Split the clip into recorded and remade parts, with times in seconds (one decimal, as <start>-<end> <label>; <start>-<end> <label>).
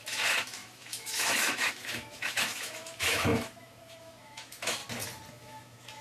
0.0-4.8 remade; 4.8-5.3 recorded; 5.3-6.0 remade